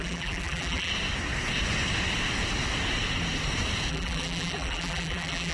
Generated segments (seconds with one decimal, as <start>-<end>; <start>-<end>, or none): 0.0-0.9; 3.9-5.5